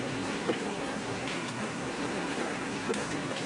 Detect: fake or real fake